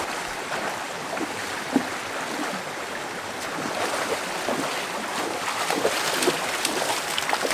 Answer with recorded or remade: recorded